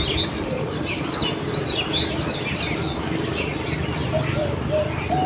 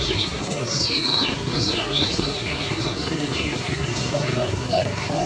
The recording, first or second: first